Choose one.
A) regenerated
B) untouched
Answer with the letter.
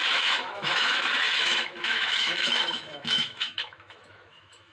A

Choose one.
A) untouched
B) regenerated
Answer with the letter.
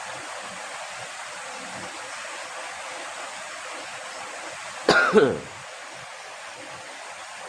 A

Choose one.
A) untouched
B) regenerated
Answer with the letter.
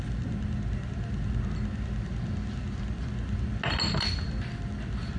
A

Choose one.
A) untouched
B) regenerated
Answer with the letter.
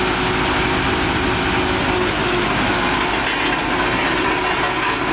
A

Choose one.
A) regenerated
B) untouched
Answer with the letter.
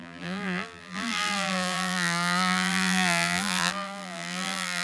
A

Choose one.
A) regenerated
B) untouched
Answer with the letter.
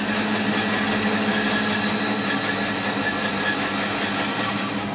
B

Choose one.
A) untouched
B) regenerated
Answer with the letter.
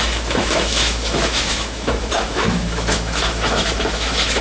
B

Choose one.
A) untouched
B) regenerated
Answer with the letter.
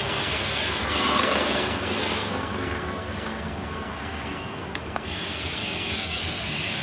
B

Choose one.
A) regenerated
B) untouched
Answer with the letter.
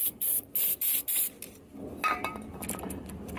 B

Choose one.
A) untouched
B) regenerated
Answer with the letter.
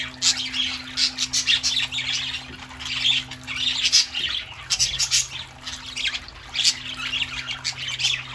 A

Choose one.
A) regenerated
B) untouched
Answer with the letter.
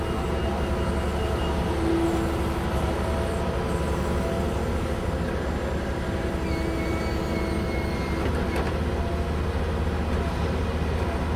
B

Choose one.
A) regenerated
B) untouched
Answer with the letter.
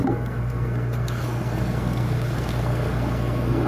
A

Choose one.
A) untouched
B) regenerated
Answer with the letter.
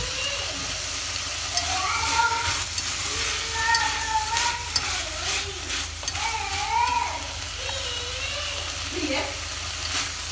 A